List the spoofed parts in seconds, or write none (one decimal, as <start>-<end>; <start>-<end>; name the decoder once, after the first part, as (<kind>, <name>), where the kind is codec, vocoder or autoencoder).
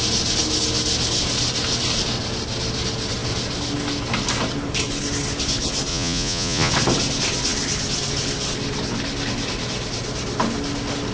5.9-6.7 (vocoder, Vocos)